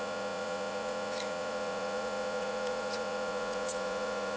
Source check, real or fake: fake